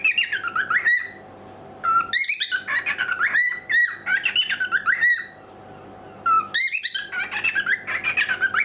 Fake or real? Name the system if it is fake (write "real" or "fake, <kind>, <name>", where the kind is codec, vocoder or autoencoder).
real